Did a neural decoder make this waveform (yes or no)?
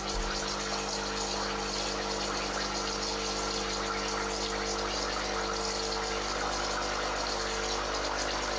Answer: no